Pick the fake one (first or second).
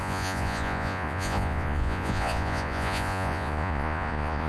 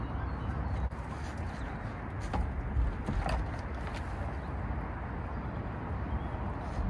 first